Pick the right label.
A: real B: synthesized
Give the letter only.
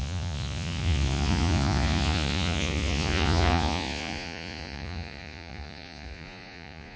B